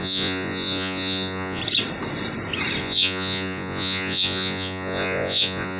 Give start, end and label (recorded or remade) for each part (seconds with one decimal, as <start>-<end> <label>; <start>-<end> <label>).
0.0-1.6 remade; 1.6-2.8 recorded; 2.8-5.8 remade